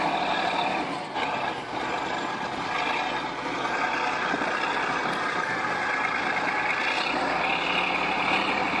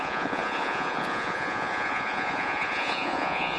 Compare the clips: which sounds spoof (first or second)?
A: second